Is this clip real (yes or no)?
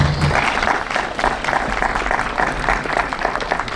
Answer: yes